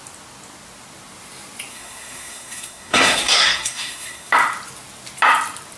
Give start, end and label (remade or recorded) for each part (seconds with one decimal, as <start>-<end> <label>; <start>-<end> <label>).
0.0-1.7 recorded; 1.7-4.3 remade; 4.3-5.8 recorded